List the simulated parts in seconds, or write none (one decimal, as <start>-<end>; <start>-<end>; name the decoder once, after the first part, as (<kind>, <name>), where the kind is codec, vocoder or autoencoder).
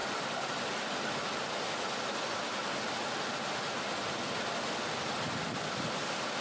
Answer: none